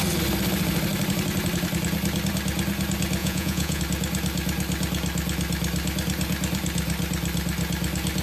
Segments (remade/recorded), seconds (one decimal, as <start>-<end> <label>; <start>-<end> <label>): 0.0-3.2 recorded; 3.2-3.8 remade; 3.8-8.2 recorded